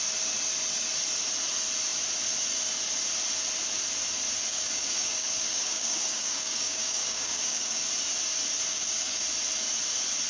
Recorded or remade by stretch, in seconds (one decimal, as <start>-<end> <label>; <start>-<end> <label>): 0.0-4.5 recorded; 4.5-7.8 remade; 7.8-8.7 recorded; 8.7-9.2 remade; 9.2-10.3 recorded